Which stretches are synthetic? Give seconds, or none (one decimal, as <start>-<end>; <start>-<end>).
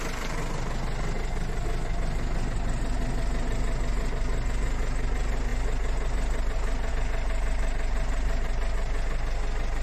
none